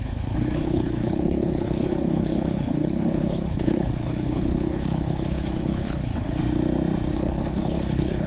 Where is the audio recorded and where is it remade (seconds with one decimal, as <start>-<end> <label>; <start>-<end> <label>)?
0.0-6.4 remade; 6.4-7.1 recorded; 7.1-8.3 remade